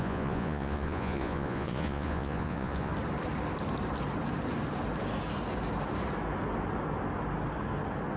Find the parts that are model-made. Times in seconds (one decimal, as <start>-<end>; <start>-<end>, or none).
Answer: 0.0-2.9